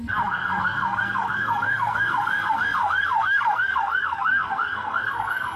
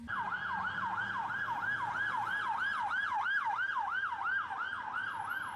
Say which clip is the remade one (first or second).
first